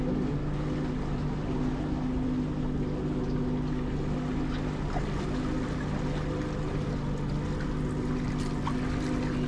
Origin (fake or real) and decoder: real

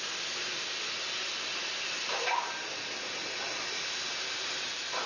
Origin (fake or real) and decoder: real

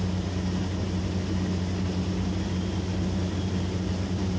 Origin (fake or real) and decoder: real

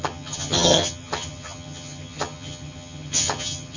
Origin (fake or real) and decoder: fake, vocoder, HiFi-GAN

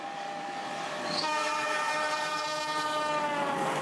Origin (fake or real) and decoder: fake, codec, DAC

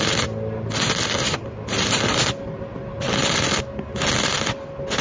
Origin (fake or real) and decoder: real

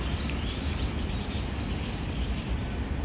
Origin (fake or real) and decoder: fake, vocoder, BigVGAN v2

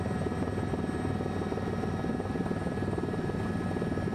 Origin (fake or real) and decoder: real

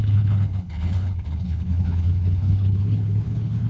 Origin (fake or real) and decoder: fake, codec, HILCodec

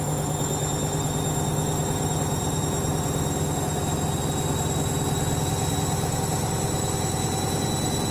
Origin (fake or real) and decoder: real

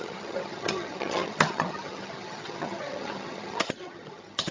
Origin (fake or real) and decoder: fake, vocoder, HiFi-GAN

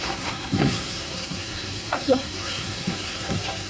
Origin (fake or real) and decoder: fake, codec, SNAC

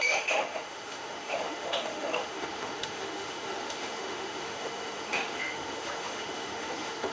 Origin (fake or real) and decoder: fake, autoencoder, DAC-VAE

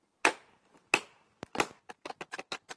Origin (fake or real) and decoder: real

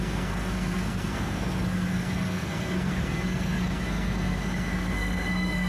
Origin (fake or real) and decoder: fake, codec, SNAC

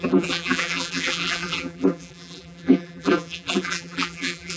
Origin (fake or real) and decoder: fake, vocoder, BigVGAN v2